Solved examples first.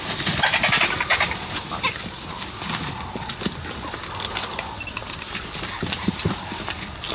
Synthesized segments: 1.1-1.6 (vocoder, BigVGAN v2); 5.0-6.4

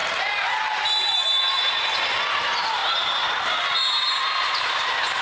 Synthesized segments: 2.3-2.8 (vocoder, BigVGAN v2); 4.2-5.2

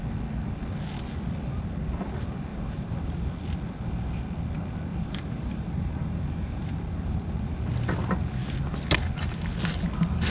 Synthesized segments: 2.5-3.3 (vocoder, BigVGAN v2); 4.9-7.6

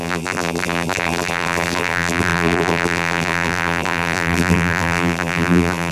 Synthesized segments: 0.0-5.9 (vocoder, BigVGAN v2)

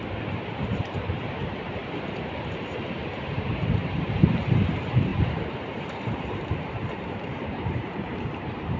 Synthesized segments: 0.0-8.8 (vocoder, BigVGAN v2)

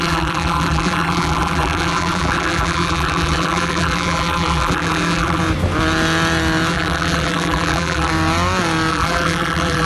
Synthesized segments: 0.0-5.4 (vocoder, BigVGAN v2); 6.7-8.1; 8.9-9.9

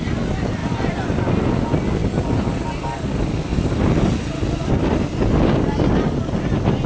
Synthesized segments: 0.6-1.2 (vocoder, BigVGAN v2)

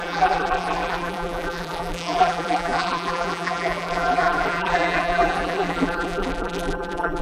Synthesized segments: 0.0-7.2 (vocoder, BigVGAN v2)